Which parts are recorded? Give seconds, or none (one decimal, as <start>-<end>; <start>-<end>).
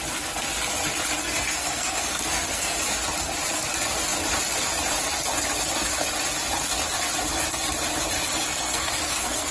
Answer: 0.0-1.2; 2.8-8.3